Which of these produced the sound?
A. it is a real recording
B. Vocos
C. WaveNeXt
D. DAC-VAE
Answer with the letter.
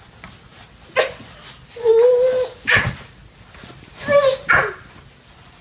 A